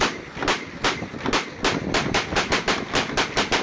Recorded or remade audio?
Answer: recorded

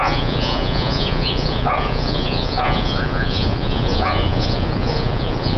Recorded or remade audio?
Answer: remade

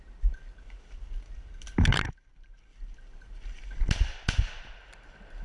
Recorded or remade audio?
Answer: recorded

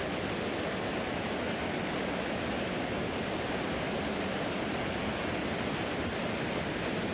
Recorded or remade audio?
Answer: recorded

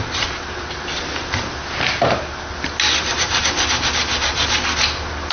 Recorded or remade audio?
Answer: recorded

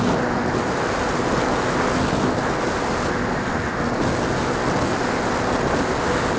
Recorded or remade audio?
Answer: recorded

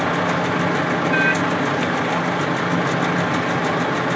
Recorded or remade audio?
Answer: recorded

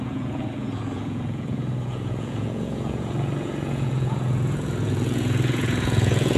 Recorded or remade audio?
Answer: remade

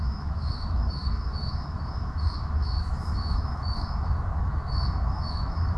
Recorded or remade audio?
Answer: remade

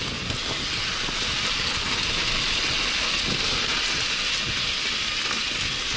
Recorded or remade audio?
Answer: recorded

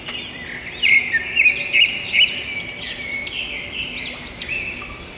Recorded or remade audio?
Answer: recorded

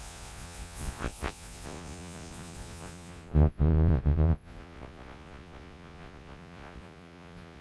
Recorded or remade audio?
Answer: remade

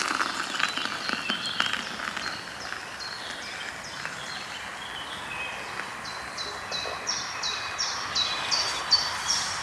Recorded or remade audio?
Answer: recorded